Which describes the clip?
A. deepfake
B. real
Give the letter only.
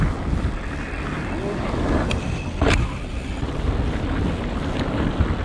B